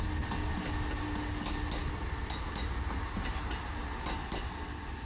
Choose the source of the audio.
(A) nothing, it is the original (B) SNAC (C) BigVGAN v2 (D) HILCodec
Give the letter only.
A